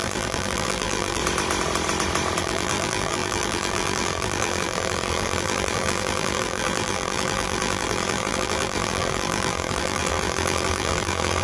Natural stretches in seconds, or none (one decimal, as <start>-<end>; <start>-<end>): 1.2-2.4